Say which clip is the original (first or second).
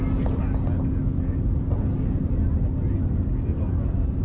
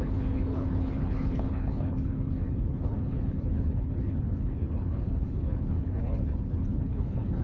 first